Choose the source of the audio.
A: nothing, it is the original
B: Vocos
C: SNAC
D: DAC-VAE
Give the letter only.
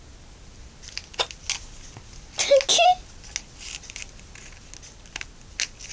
A